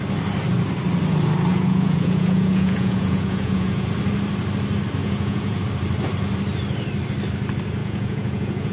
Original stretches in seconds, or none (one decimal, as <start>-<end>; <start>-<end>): 0.0-1.5; 3.9-5.0; 5.6-7.8